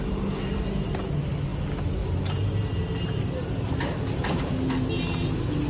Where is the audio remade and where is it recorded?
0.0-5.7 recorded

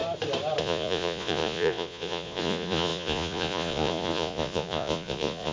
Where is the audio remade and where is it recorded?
0.0-0.6 recorded; 0.6-5.5 remade

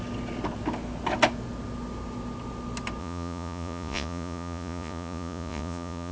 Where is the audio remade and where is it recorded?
0.0-3.0 recorded; 3.0-6.1 remade

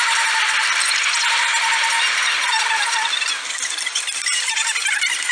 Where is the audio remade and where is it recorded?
0.0-5.3 recorded